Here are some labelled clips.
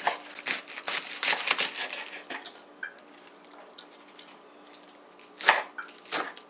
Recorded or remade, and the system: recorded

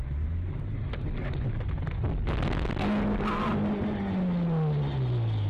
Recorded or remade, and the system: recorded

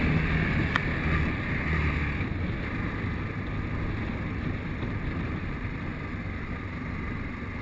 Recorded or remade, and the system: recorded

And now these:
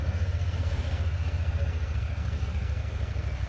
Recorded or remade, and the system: remade, codec, SNAC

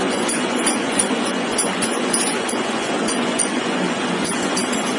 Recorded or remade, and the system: remade, vocoder, Vocos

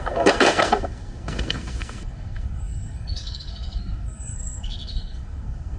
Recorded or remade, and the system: remade, codec, SNAC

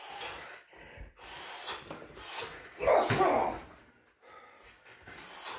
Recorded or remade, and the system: recorded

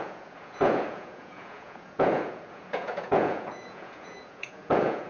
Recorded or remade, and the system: remade, vocoder, Vocos